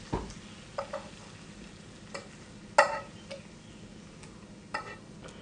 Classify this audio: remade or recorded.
recorded